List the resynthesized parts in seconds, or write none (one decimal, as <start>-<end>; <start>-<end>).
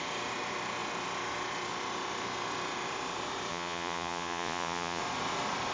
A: 3.5-5.0